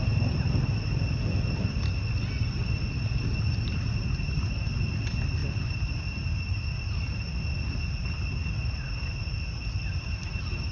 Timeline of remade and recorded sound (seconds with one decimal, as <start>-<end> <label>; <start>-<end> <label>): 0.0-10.7 recorded